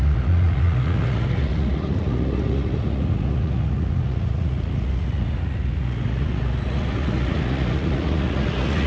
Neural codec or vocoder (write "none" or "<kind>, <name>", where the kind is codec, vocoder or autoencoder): vocoder, Vocos